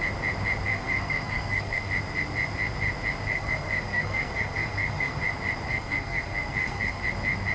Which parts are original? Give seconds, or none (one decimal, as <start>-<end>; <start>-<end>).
0.0-0.7; 1.9-3.3; 5.2-5.7; 7.0-7.5